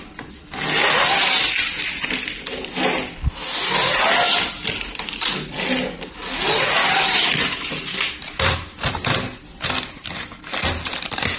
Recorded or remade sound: recorded